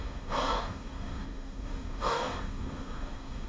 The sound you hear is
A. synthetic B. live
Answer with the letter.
A